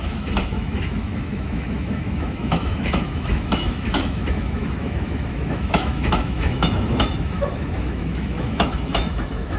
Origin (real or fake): fake